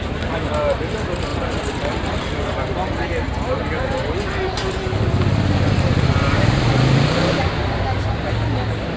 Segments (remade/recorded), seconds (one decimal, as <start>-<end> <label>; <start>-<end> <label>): 0.0-1.3 recorded; 1.3-2.3 remade; 2.3-6.3 recorded; 6.3-7.5 remade; 7.5-9.0 recorded